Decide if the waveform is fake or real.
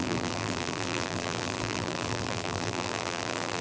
fake